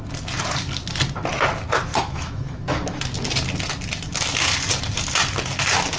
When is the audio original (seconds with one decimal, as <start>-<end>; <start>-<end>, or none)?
0.0-1.9; 3.0-6.0